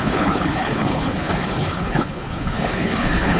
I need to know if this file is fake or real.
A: fake